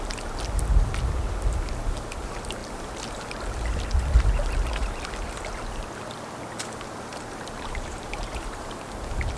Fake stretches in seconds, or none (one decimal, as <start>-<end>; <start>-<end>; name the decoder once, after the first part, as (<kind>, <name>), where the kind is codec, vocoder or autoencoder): 7.1-8.8 (vocoder, BigVGAN v2)